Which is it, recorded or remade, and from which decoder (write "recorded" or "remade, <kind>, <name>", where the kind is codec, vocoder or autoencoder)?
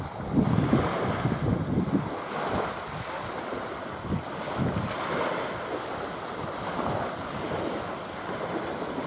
recorded